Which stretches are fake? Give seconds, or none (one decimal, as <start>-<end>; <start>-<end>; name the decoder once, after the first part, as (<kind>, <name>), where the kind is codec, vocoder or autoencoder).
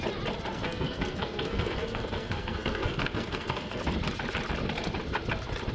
0.5-3.9 (codec, SNAC)